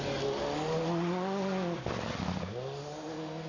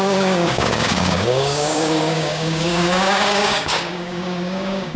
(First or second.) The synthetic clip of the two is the second